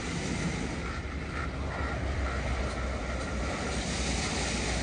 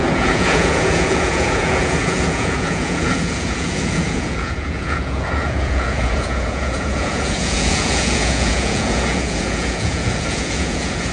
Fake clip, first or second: second